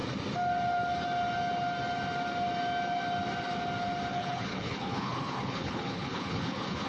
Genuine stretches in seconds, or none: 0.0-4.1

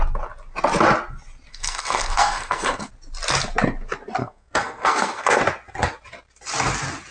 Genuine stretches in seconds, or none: 0.0-1.5; 2.9-4.2; 5.4-7.1

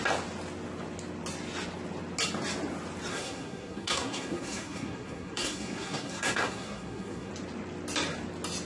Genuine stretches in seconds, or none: 0.0-3.1; 7.3-8.7

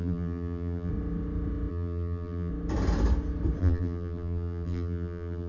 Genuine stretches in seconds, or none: 0.9-1.7; 2.5-3.6

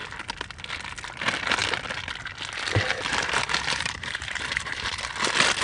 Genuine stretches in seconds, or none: 0.0-3.1; 5.0-5.6

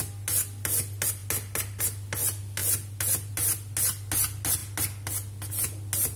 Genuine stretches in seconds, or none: 0.0-6.2

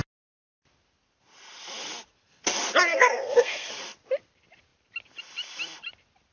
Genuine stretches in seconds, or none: 0.0-2.9; 3.7-6.3